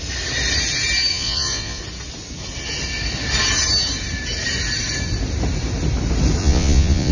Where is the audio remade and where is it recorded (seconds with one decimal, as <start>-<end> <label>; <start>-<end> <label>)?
0.0-1.1 recorded; 1.1-1.8 remade; 1.8-6.4 recorded; 6.4-7.1 remade